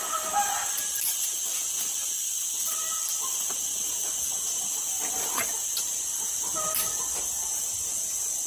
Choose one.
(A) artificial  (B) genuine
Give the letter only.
B